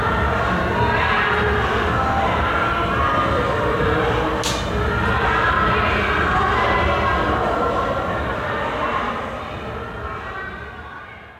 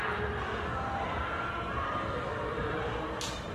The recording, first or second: first